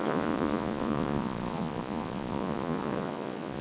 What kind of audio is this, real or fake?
fake